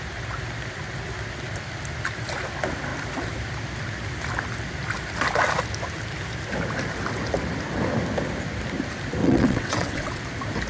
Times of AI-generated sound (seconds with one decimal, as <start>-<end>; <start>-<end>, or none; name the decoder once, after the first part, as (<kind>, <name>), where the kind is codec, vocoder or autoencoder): 9.2-10.2 (vocoder, WaveNeXt)